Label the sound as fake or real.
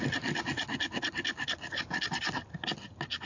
real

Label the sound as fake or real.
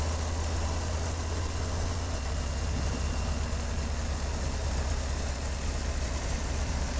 real